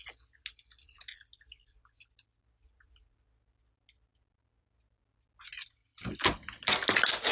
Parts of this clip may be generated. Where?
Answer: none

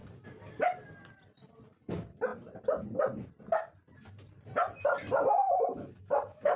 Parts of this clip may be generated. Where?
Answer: none

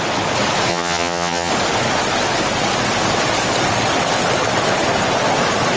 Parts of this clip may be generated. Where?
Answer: 0.7-1.5 (vocoder, HiFi-GAN)

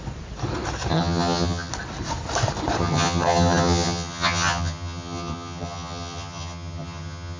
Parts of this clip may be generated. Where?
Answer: 0.9-1.7 (vocoder, HiFi-GAN); 2.8-7.4

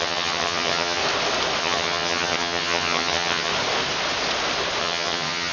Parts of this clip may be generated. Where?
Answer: 0.0-1.0 (vocoder, HiFi-GAN); 1.6-3.5; 4.8-5.5